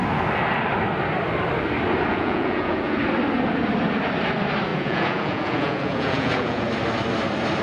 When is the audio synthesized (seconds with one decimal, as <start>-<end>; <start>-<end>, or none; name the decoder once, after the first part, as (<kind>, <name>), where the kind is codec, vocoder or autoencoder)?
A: 2.1-3.0 (vocoder, Vocos); 4.7-6.7